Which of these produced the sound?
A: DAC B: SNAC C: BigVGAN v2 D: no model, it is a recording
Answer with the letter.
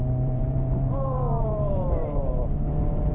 C